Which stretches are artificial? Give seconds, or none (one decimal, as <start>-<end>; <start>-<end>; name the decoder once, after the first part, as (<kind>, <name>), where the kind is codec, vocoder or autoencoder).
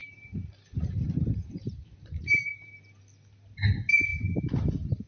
0.0-3.0 (vocoder, BigVGAN v2)